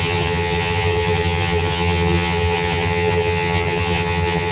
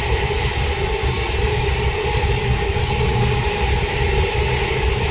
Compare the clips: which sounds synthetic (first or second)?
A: first